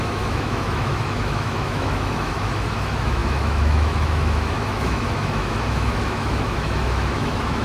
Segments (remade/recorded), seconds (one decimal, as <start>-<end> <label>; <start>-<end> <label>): 0.0-7.6 remade